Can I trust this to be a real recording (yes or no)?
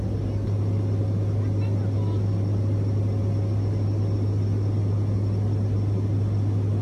yes